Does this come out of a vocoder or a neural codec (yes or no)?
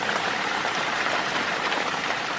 yes